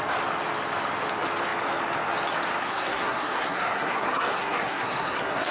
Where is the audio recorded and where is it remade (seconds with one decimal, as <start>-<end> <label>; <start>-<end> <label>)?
0.0-2.6 recorded; 2.6-5.5 remade